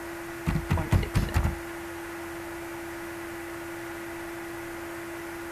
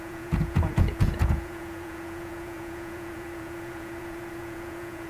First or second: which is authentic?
first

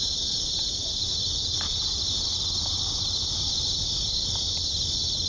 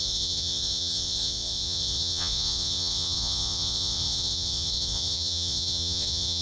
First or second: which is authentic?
first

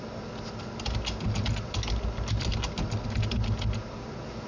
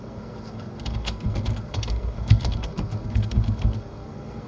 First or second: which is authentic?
first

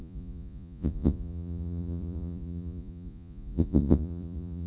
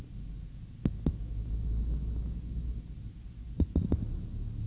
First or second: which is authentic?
second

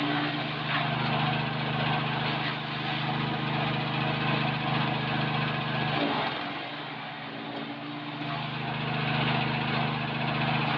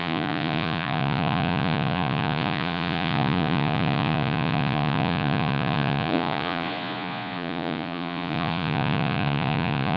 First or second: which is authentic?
first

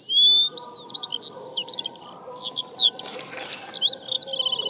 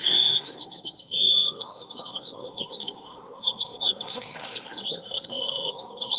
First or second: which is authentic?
first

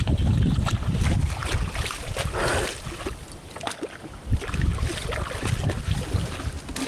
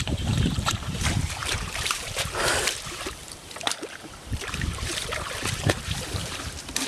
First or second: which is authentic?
first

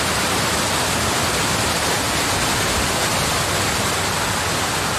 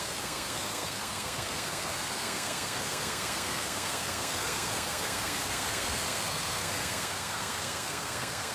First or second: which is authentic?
first